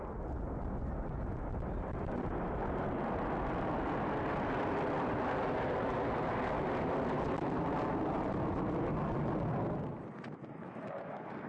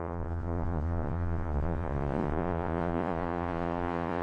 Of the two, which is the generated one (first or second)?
second